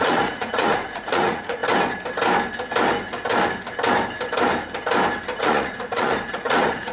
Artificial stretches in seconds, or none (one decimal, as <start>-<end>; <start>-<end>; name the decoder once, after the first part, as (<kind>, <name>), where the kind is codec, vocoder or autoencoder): 0.0-1.6 (vocoder, Vocos); 5.4-6.9